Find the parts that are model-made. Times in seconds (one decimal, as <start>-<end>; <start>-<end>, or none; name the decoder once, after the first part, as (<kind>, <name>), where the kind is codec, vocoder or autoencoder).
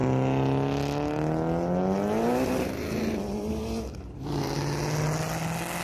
none